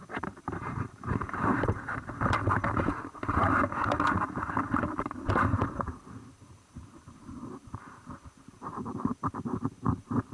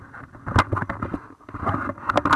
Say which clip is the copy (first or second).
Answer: first